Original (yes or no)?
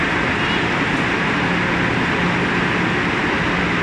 yes